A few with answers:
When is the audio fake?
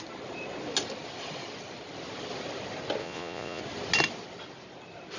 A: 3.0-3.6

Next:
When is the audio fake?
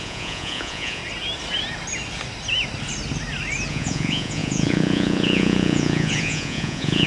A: 0.0-1.0; 3.7-7.1